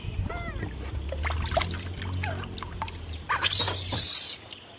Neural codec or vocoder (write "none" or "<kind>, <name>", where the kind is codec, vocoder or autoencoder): none